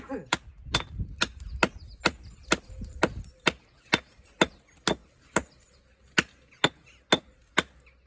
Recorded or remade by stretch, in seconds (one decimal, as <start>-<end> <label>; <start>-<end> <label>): 0.0-8.1 recorded